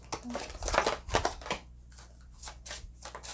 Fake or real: real